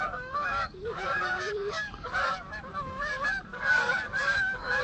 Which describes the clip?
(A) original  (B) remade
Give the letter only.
B